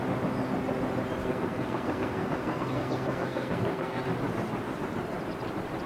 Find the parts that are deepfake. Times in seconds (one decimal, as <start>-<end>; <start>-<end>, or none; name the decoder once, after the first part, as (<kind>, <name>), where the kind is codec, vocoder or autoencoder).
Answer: 1.2-4.0 (codec, SNAC)